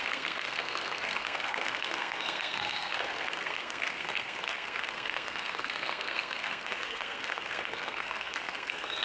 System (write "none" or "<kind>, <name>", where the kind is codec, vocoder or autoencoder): codec, SNAC